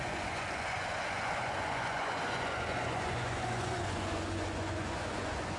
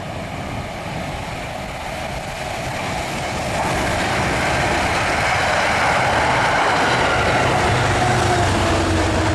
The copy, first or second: first